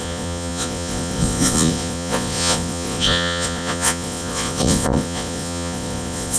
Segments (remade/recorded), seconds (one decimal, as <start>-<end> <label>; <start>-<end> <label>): 0.0-6.4 remade